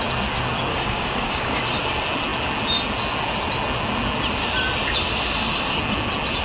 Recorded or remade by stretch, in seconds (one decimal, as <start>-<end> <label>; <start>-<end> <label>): 0.0-0.7 recorded; 0.7-1.6 remade; 1.6-6.4 recorded